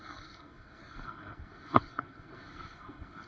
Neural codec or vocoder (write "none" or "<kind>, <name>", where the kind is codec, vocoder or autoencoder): codec, SNAC